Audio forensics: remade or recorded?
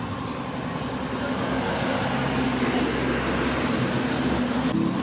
recorded